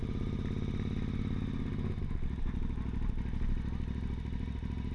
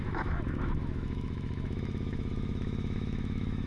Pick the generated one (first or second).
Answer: second